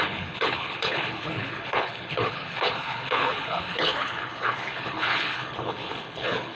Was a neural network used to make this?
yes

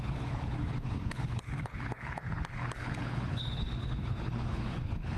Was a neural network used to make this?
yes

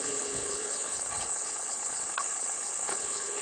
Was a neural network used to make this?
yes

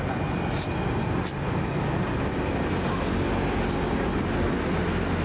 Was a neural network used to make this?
no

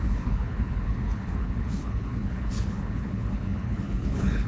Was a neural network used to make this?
yes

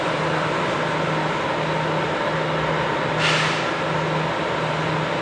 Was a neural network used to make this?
no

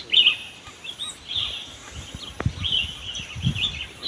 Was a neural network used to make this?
no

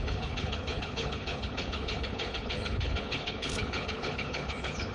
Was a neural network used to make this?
yes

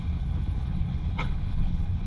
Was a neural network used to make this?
yes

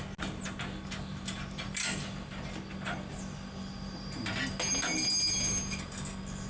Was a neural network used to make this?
no